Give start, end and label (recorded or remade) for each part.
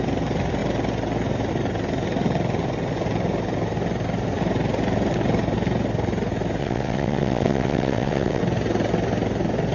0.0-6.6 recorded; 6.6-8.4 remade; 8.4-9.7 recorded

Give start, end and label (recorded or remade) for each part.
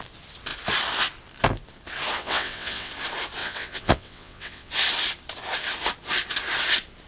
0.0-2.2 recorded; 2.2-2.9 remade; 2.9-3.4 recorded; 3.4-4.7 remade; 4.7-7.1 recorded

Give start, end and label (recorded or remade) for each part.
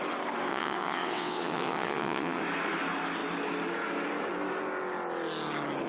0.0-0.5 recorded; 0.5-2.4 remade; 2.4-5.9 recorded